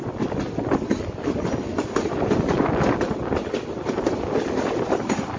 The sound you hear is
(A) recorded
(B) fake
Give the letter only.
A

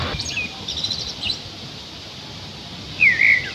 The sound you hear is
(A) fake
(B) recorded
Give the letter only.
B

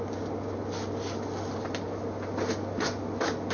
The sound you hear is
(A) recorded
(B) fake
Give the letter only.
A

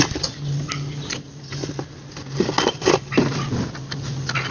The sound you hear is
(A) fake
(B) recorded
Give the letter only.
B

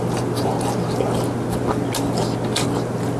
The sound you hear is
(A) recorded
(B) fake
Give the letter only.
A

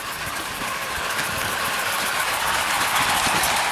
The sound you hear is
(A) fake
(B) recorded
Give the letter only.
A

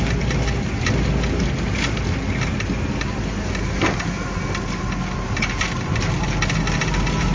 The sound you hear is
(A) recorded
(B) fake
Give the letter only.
A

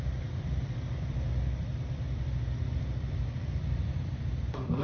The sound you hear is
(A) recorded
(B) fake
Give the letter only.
B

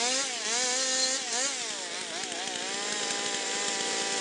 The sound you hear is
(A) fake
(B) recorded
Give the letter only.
B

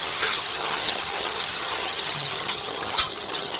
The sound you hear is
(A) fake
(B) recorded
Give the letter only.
A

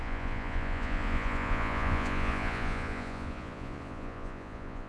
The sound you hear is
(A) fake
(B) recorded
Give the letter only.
A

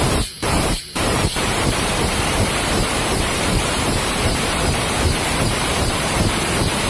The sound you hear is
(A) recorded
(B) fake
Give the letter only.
B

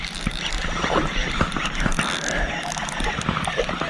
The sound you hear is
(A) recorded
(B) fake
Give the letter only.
A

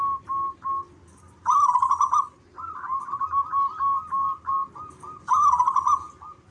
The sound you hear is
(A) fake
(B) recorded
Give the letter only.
B